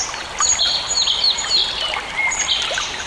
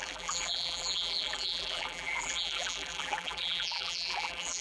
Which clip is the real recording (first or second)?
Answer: first